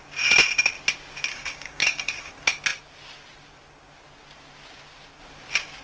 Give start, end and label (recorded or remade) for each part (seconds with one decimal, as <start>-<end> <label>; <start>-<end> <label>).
0.0-1.3 recorded; 1.3-2.3 remade; 2.3-5.8 recorded